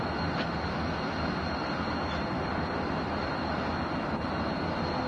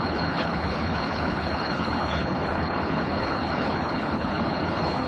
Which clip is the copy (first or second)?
second